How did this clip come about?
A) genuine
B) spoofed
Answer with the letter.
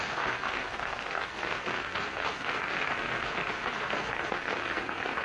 B